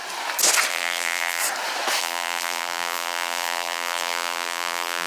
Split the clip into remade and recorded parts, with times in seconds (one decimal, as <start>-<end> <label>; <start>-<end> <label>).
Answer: 0.0-0.7 recorded; 0.7-1.4 remade; 1.4-2.0 recorded; 2.0-5.1 remade